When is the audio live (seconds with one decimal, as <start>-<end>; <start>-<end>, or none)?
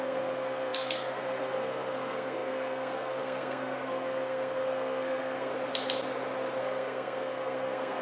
5.5-6.6